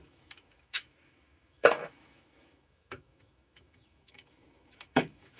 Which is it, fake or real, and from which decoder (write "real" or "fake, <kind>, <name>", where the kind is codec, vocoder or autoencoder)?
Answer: fake, autoencoder, DAC-VAE